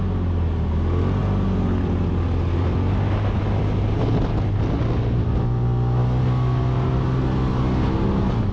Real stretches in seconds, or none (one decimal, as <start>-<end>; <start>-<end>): 0.0-8.5